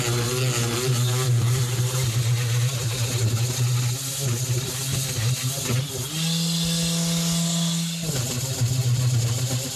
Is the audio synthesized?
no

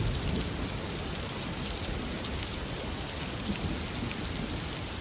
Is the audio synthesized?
no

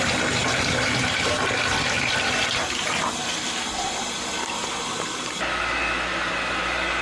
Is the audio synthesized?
no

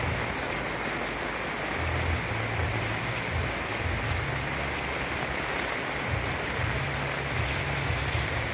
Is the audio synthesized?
no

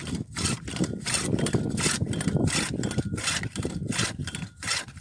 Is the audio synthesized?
no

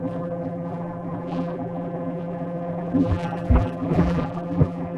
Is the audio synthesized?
yes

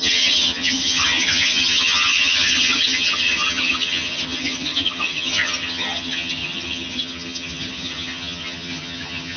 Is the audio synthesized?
yes